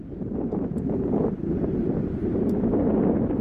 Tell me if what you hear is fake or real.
real